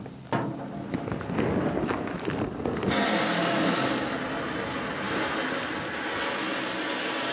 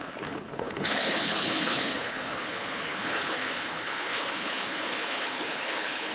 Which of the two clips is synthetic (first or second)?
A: second